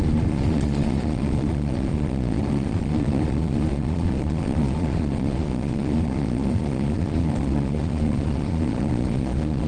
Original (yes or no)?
no